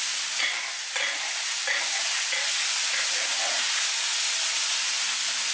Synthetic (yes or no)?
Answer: no